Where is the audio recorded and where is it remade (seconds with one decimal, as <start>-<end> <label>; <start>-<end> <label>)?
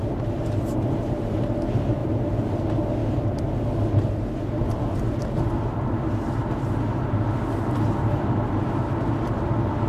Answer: 0.0-2.0 recorded; 2.0-2.6 remade; 2.6-9.9 recorded